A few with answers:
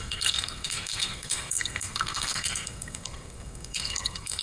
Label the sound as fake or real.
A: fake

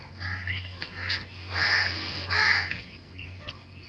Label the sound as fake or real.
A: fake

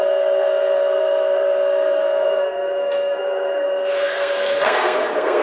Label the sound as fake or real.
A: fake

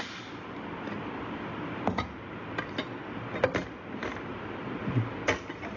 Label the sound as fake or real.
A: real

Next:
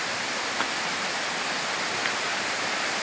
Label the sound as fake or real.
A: real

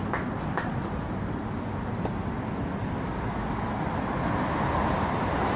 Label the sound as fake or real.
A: real